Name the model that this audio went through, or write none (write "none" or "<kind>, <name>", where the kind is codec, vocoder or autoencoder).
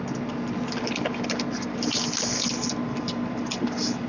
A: none